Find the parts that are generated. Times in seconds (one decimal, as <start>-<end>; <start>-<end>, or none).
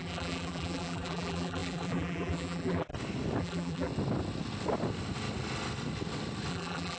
0.0-2.9; 3.4-3.9; 6.5-7.0